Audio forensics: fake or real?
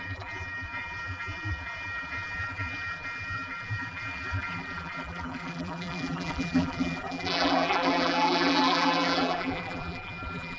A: fake